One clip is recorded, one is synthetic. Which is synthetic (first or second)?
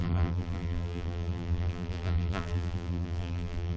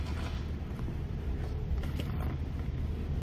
first